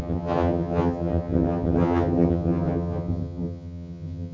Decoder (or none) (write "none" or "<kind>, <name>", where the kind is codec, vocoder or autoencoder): vocoder, HiFi-GAN